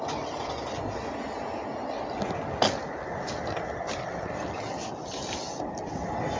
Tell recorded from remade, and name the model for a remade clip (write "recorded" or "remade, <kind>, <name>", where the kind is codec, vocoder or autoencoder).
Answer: recorded